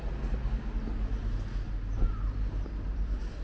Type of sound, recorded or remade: recorded